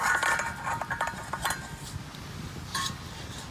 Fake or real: real